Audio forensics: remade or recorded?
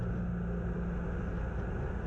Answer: recorded